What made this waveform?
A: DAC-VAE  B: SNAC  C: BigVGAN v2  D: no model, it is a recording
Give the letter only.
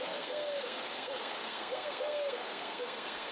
B